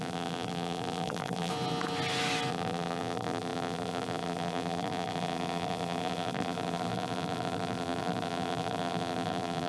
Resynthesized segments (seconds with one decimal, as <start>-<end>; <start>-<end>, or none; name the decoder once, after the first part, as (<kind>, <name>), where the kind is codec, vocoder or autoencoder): 0.0-1.5 (vocoder, BigVGAN v2); 2.5-9.7